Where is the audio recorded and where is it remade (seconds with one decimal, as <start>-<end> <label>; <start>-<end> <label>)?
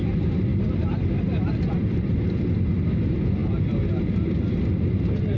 0.0-5.4 recorded